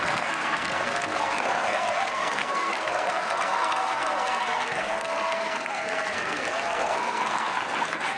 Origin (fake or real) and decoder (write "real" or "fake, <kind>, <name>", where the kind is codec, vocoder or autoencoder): fake, codec, SNAC